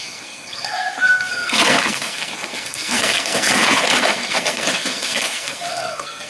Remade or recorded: remade